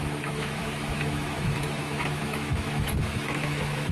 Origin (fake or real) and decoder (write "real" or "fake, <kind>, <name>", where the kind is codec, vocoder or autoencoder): fake, autoencoder, DAC-VAE